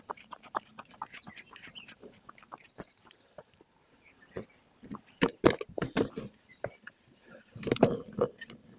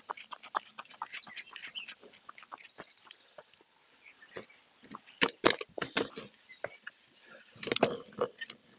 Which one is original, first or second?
second